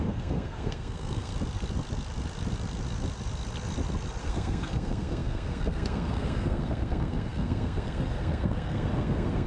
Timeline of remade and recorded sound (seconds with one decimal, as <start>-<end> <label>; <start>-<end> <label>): 0.0-1.3 remade; 1.3-4.2 recorded; 4.2-9.5 remade